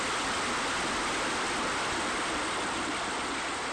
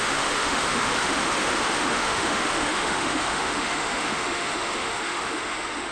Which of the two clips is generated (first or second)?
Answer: second